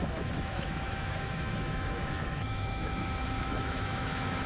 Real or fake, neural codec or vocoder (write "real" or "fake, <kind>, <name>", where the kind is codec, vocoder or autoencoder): fake, autoencoder, DAC-VAE